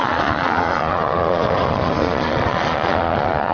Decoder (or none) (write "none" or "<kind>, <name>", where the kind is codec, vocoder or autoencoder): vocoder, Vocos